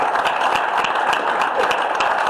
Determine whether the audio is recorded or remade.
recorded